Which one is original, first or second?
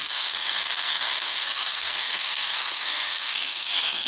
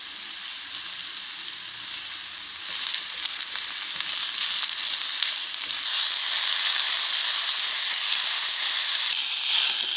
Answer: second